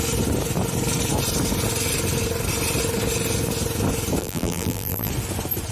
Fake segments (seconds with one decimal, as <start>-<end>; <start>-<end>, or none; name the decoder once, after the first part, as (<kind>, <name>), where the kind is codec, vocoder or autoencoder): 4.2-5.1 (vocoder, BigVGAN v2)